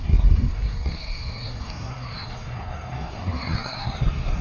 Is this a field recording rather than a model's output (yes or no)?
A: no